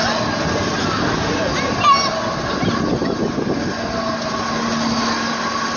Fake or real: real